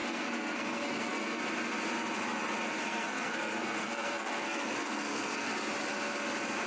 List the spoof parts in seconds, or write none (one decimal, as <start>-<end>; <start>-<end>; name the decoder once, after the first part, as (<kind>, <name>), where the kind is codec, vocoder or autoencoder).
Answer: 0.0-1.4 (codec, SNAC); 2.8-5.5